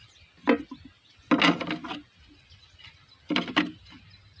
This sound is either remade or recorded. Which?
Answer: recorded